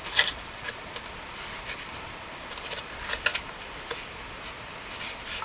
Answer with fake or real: real